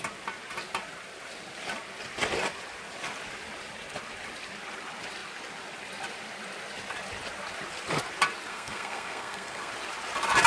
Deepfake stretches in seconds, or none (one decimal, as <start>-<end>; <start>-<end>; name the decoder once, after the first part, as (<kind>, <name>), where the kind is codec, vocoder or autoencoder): 8.5-9.7 (codec, SNAC)